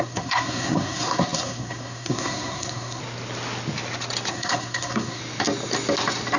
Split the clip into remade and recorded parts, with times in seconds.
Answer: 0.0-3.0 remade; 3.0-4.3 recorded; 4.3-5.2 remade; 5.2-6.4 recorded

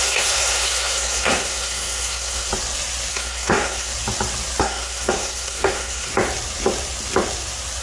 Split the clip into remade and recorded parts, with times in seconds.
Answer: 0.0-2.5 remade; 2.5-3.1 recorded; 3.1-3.9 remade; 3.9-4.6 recorded; 4.6-6.1 remade; 6.1-7.8 recorded

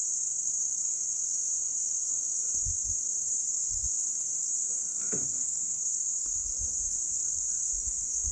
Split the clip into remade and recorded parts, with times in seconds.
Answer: 0.0-8.3 remade

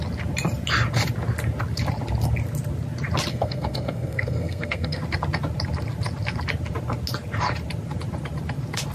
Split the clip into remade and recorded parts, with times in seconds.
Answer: 0.0-3.3 recorded; 3.3-5.0 remade; 5.0-8.9 recorded

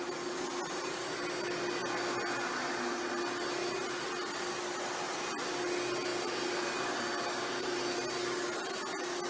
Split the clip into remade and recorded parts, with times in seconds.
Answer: 0.0-9.3 recorded

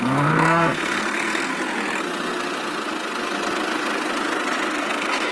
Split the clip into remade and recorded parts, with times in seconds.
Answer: 0.0-1.5 remade; 1.5-4.7 recorded; 4.7-5.3 remade

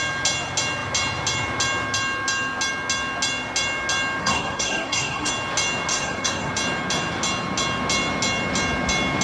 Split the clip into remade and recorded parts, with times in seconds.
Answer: 0.0-4.2 recorded; 4.2-5.3 remade; 5.3-5.9 recorded; 5.9-6.5 remade; 6.5-9.2 recorded